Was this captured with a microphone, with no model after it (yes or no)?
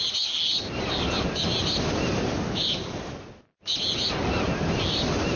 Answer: yes